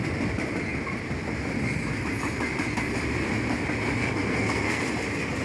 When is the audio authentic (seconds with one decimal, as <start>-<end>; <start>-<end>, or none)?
0.0-4.0; 4.8-5.4

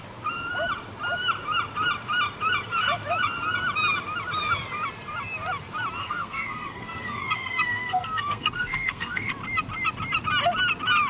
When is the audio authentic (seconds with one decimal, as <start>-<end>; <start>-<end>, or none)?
0.0-6.0; 9.3-11.1

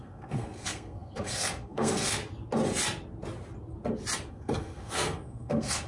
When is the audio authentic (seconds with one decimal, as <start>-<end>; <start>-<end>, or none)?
2.2-4.3

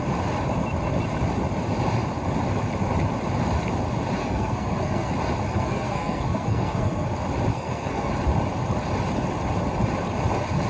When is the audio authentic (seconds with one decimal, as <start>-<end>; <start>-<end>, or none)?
0.0-4.2; 5.1-5.5; 7.1-7.5; 8.1-10.7